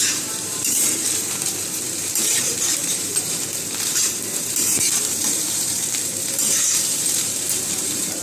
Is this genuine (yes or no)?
no